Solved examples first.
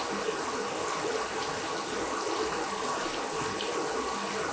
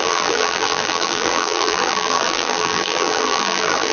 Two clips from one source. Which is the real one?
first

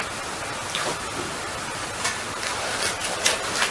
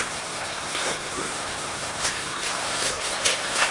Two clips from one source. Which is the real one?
first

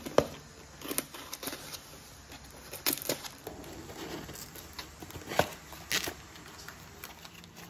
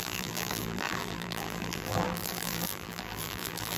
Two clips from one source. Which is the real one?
first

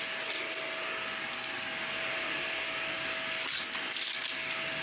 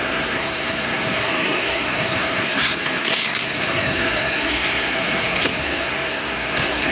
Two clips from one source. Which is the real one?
first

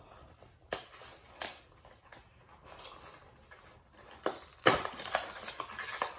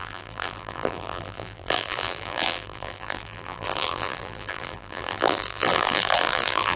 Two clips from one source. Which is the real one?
first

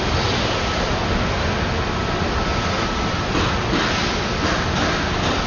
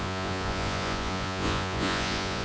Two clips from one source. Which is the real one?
first